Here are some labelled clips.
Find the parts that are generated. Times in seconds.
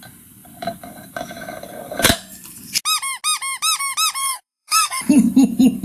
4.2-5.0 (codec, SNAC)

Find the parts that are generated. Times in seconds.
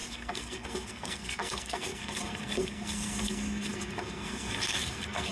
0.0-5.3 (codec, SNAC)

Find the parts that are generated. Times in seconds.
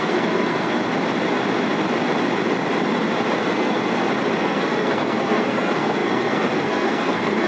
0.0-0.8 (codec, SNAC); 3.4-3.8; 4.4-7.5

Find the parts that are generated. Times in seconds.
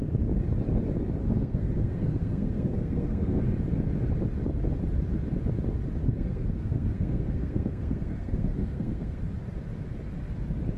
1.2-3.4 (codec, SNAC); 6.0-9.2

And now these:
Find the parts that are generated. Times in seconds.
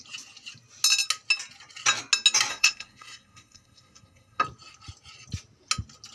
2.5-4.4 (codec, SNAC)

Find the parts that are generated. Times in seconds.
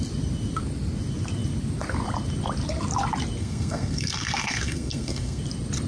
3.4-5.4 (codec, SNAC)